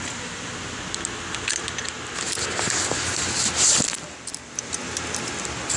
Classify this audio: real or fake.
real